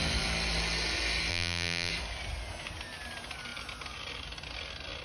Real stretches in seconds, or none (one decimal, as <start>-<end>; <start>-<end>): 0.0-1.3; 1.9-5.0